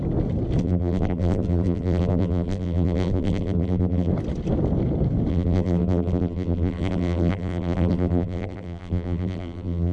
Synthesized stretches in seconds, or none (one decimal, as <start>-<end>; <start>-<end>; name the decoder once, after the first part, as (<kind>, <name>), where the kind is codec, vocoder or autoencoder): 0.6-4.1 (vocoder, BigVGAN v2); 5.3-9.9